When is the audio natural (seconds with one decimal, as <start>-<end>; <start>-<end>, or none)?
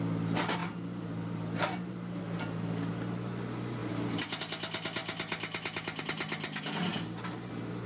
0.0-0.6; 2.2-3.8; 4.4-7.9